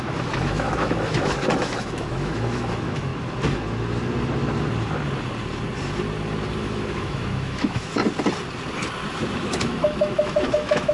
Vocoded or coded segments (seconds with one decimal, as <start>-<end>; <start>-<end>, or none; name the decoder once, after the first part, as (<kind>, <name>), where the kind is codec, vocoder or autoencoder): 0.0-3.1 (autoencoder, DAC-VAE); 6.6-8.0; 9.3-10.9

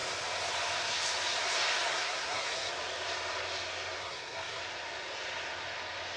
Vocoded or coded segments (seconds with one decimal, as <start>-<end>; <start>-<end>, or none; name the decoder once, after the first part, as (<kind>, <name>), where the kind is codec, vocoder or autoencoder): 1.9-2.7 (codec, SNAC); 4.0-4.6

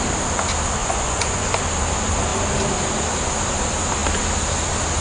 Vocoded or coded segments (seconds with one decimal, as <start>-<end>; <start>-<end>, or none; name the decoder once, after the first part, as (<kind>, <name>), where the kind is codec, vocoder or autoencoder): 0.8-1.5 (vocoder, Vocos)

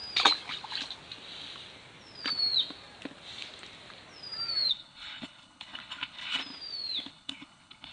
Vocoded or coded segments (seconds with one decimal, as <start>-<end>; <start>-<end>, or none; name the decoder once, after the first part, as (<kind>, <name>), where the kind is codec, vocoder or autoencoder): 4.7-6.4 (codec, HILCodec); 7.1-7.9

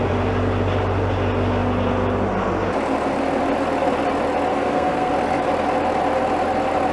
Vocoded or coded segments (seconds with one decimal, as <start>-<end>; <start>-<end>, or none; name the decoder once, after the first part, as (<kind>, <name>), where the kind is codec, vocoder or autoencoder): 4.5-5.1 (codec, SNAC)

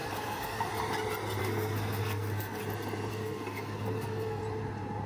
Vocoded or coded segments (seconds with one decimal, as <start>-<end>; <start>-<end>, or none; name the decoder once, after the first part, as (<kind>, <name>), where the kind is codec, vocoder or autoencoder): 0.0-0.7 (codec, SNAC); 1.4-2.6; 3.1-4.4

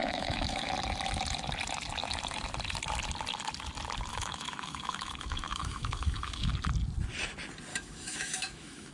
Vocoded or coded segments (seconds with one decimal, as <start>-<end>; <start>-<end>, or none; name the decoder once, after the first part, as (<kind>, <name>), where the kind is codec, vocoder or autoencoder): 0.0-0.7 (autoencoder, DAC-VAE); 4.1-6.5; 7.7-8.9

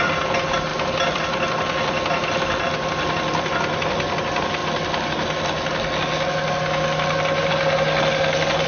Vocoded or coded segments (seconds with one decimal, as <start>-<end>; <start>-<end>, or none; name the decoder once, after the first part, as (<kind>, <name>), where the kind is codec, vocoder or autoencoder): none